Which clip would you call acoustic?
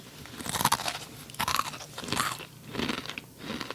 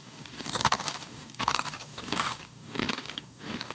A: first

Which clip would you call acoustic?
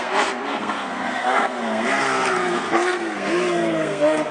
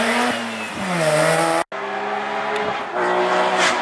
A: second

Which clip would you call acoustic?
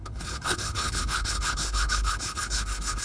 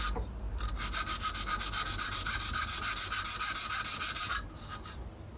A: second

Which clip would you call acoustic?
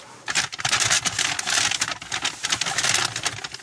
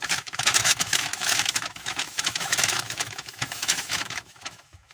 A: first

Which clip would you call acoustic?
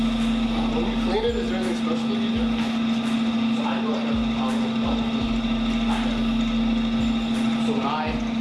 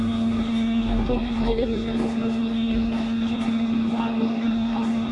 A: first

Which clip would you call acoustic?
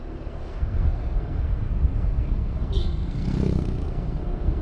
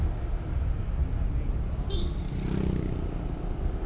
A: second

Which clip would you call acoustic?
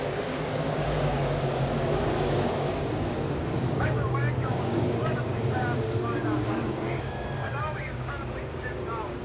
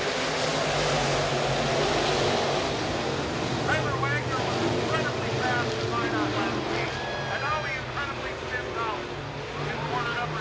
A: second